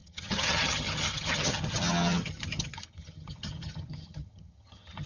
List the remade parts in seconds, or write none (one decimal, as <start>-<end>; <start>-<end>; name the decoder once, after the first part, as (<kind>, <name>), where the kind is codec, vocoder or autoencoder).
0.0-5.1 (vocoder, HiFi-GAN)